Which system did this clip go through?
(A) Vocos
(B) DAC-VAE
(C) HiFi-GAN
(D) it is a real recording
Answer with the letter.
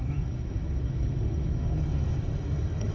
B